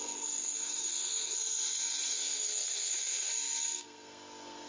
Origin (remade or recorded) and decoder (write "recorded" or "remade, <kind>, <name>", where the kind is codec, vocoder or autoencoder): remade, codec, SNAC